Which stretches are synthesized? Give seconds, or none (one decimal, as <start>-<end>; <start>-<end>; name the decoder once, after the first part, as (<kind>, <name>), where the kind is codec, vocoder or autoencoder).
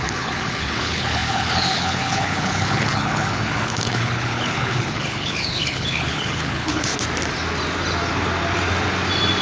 0.0-6.9 (codec, HILCodec)